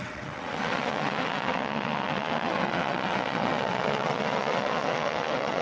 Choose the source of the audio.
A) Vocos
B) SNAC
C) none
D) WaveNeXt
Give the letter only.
D